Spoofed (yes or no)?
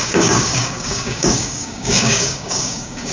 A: yes